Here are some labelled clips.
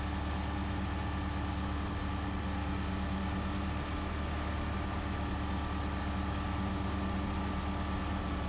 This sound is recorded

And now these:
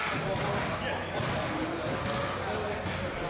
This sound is recorded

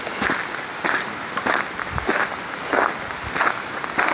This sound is recorded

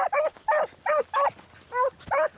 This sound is recorded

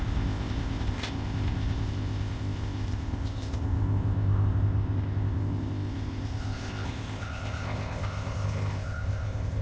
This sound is remade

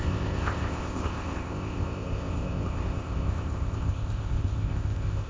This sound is remade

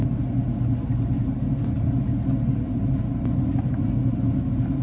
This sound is recorded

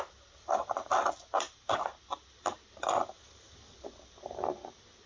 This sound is recorded